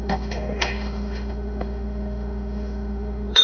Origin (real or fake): fake